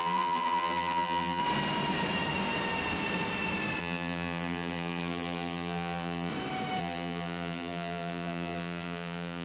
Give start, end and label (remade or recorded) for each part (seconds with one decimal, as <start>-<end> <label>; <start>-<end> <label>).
0.0-1.4 remade; 1.4-3.8 recorded; 3.8-6.3 remade; 6.3-6.8 recorded; 6.8-9.4 remade